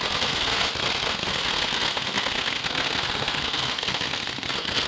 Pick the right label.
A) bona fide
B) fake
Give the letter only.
B